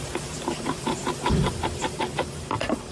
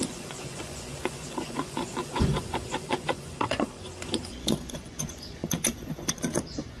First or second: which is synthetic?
second